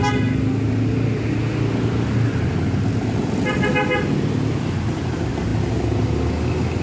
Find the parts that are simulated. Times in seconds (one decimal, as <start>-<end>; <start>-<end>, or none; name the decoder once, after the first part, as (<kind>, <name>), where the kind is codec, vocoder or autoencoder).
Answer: none